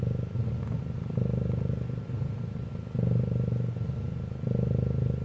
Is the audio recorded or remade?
recorded